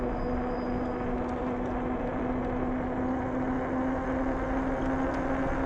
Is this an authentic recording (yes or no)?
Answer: yes